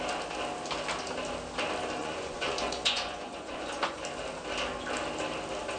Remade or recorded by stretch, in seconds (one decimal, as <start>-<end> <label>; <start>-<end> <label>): 0.0-2.0 recorded; 2.0-4.0 remade; 4.0-5.8 recorded